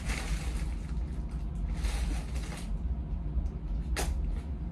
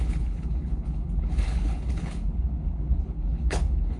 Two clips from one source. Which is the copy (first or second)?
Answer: second